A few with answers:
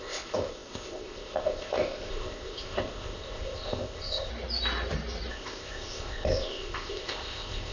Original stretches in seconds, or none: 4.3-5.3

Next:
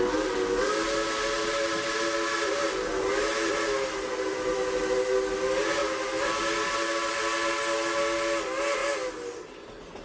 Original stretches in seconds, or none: 0.0-10.0

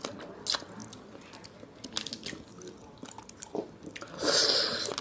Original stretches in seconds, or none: 0.0-5.0

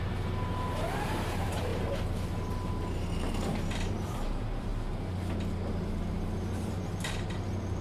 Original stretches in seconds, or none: 1.7-3.3; 4.7-6.0

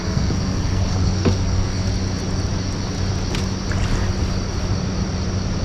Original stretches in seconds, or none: 1.9-5.6